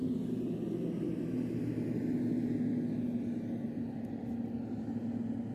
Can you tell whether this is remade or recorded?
recorded